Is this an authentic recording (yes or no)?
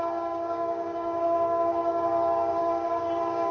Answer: no